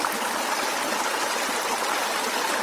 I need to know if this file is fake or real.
real